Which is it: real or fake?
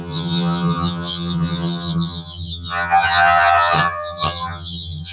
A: fake